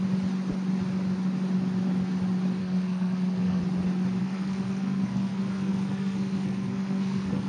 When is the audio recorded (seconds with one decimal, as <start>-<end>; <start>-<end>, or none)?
0.0-2.6; 3.6-4.2